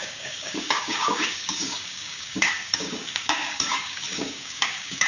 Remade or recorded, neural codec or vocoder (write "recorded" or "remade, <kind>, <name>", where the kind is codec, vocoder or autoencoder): remade, codec, DAC